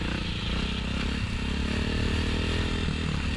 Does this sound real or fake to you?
real